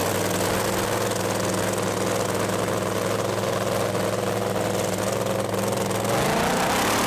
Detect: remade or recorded recorded